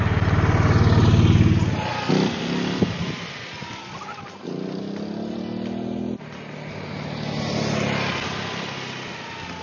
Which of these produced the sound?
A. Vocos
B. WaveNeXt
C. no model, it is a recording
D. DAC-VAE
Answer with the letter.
C